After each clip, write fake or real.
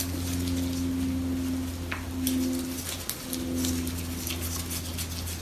real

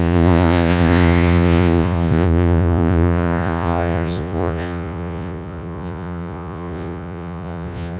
fake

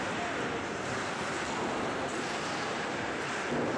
real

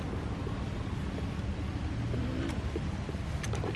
real